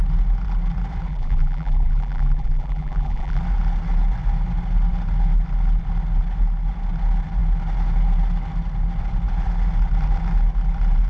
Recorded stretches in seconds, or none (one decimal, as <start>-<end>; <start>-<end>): 0.0-1.1; 3.4-11.1